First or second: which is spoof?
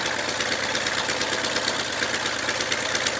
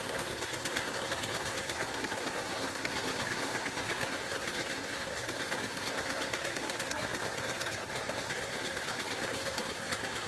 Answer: second